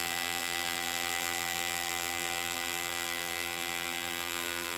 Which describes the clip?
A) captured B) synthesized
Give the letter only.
B